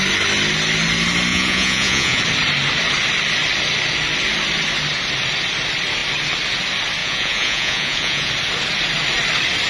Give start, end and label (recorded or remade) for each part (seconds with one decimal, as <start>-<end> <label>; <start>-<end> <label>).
0.0-1.3 recorded; 1.3-2.2 remade; 2.2-7.0 recorded; 7.0-8.3 remade; 8.3-9.7 recorded

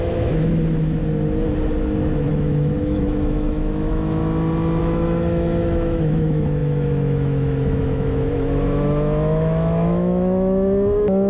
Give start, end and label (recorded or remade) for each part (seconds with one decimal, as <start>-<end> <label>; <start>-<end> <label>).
0.0-1.0 remade; 1.0-2.3 recorded; 2.3-4.2 remade; 4.2-4.8 recorded; 4.8-11.3 remade

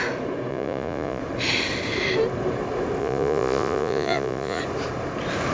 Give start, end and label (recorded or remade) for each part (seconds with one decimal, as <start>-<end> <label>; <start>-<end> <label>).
0.0-0.5 recorded; 0.5-1.2 remade; 1.2-3.0 recorded; 3.0-4.6 remade; 4.6-5.5 recorded

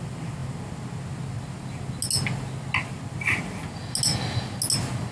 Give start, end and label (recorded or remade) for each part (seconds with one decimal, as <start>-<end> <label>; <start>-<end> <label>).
0.0-5.1 recorded

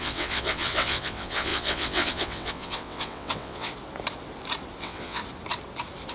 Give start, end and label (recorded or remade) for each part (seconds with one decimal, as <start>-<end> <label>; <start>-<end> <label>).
0.0-3.7 remade; 3.7-4.8 recorded; 4.8-5.2 remade; 5.2-6.1 recorded

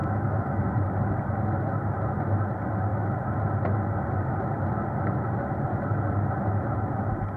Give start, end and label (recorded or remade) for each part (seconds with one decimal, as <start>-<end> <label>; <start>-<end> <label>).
0.0-0.6 remade; 0.6-7.4 recorded

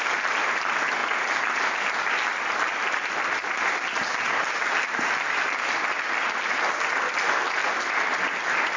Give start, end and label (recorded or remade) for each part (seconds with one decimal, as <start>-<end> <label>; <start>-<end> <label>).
0.0-8.8 recorded

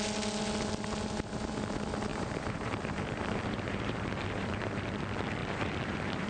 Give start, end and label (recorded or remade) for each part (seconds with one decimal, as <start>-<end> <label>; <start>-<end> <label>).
0.0-2.1 recorded; 2.1-5.0 remade; 5.0-5.4 recorded; 5.4-6.3 remade